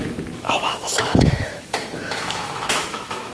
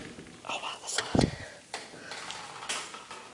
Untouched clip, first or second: second